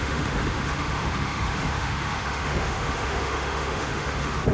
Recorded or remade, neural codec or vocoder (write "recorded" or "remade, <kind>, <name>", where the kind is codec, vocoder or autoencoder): remade, autoencoder, DAC-VAE